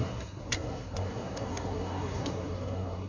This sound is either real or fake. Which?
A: fake